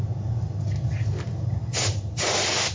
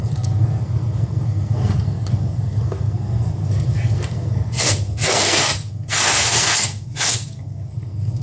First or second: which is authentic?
first